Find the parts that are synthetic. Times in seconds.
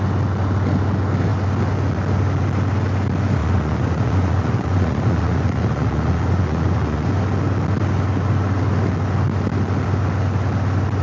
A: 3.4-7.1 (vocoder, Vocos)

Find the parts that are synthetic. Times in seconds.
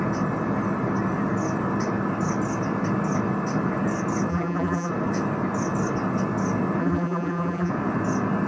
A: 4.3-4.9 (vocoder, BigVGAN v2); 6.8-7.7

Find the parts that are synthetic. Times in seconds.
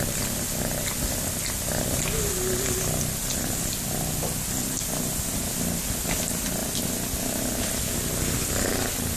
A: none